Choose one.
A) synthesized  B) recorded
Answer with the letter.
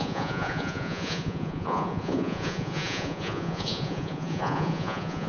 A